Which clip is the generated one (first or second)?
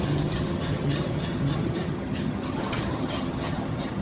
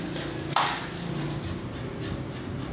first